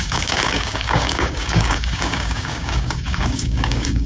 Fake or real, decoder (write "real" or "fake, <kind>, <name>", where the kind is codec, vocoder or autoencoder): fake, codec, DAC